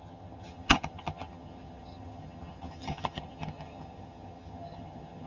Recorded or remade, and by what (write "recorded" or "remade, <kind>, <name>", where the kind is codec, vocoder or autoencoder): remade, vocoder, HiFi-GAN